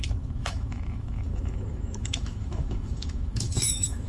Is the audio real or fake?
fake